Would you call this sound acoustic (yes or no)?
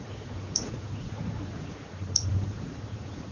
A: no